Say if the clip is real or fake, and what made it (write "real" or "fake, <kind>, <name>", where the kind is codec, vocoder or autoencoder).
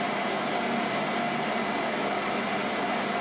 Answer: real